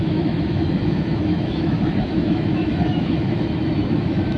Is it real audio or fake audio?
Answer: fake